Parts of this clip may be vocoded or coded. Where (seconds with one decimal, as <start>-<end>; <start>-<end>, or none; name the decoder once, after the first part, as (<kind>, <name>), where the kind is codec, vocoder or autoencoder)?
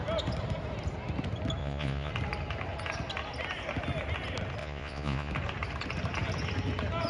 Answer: 1.6-2.1 (vocoder, Vocos); 4.6-5.3